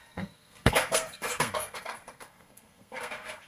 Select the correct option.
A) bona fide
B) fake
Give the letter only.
B